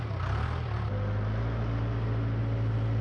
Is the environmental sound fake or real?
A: real